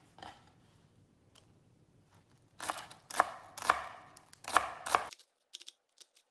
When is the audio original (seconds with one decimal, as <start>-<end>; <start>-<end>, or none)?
0.0-6.3